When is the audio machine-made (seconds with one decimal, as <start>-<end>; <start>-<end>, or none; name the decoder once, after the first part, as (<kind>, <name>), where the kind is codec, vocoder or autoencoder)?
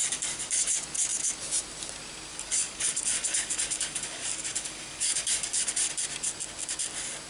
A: 0.0-0.7 (codec, DAC); 2.3-5.9